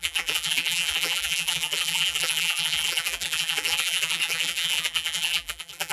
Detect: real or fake fake